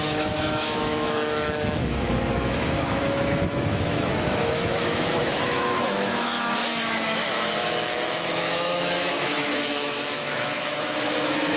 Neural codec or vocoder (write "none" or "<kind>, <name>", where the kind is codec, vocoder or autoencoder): autoencoder, DAC-VAE